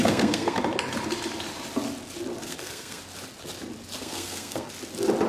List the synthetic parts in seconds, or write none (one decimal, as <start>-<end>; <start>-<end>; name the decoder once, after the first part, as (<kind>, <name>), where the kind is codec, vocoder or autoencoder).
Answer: 0.0-0.6 (codec, SNAC); 2.4-3.0; 4.0-4.7